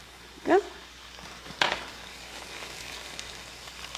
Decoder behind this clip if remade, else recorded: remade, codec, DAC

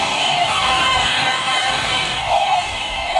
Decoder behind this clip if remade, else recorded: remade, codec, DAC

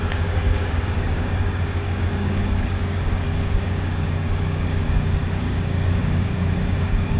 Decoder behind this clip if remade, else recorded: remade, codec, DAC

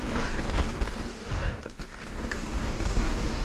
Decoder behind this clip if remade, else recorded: remade, codec, DAC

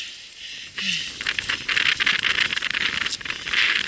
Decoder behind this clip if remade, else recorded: recorded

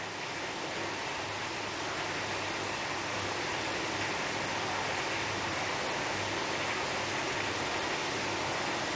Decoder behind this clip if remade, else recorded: recorded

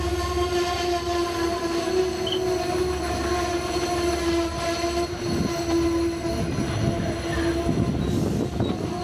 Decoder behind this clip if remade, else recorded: recorded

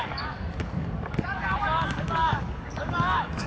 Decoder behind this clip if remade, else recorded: remade, codec, DAC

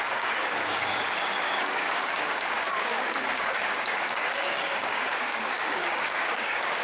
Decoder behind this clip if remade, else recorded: remade, codec, DAC